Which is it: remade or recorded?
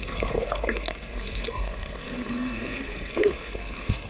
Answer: remade